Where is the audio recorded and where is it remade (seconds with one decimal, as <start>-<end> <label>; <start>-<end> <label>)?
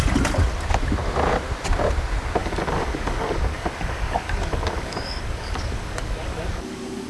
0.0-2.4 recorded; 2.4-7.1 remade